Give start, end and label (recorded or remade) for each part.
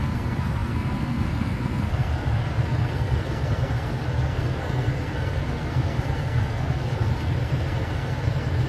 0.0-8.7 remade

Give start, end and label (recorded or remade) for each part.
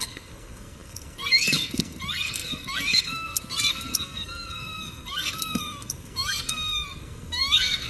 0.0-7.9 remade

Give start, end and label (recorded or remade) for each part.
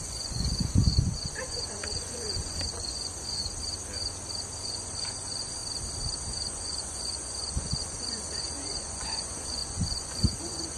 0.0-3.4 remade; 3.4-4.6 recorded; 4.6-5.6 remade; 5.6-6.5 recorded; 6.5-10.8 remade